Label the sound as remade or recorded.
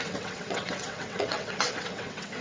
remade